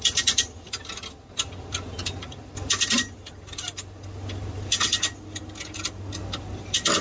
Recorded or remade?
recorded